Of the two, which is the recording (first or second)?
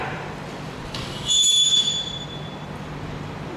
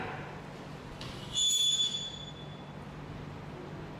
second